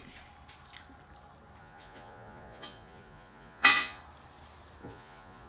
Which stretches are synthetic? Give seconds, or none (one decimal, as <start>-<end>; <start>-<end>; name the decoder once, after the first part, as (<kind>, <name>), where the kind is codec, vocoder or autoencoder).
1.6-4.0 (vocoder, Vocos); 4.8-5.5